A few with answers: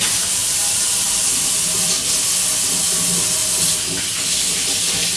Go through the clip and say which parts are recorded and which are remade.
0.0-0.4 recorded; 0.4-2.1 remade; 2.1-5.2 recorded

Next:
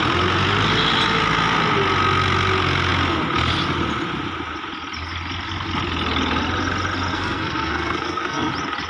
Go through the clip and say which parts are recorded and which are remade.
0.0-7.1 recorded; 7.1-8.5 remade; 8.5-8.9 recorded